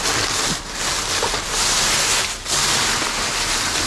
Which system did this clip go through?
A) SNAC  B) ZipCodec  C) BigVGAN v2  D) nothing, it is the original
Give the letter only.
D